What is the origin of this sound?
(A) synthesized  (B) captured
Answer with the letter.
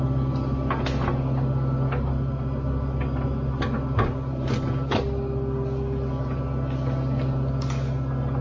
B